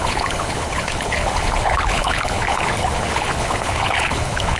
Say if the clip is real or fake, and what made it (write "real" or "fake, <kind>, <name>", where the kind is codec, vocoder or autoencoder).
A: fake, codec, HILCodec